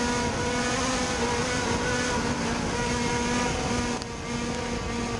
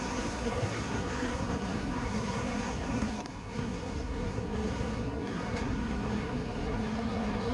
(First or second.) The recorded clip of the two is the first